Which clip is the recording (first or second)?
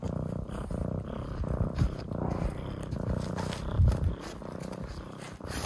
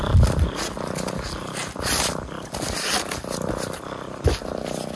second